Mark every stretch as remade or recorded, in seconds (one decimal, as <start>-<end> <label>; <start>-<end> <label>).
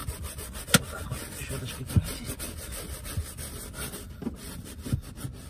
0.0-5.5 recorded